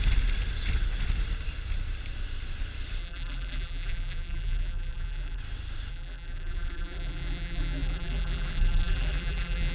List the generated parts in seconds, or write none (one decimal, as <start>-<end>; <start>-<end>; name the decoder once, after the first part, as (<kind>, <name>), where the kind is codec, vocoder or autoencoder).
3.0-5.4 (vocoder, BigVGAN v2); 5.9-9.7